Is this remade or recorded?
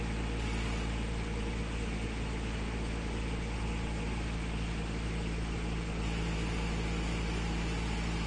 recorded